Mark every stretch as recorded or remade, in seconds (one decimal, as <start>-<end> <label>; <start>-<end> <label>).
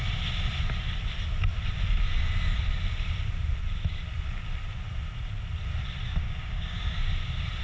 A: 0.0-6.2 recorded; 6.2-6.8 remade; 6.8-7.6 recorded